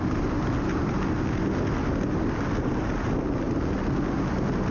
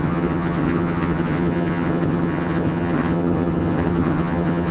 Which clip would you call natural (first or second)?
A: first